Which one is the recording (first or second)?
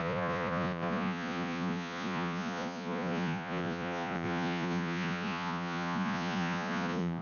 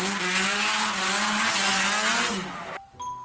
second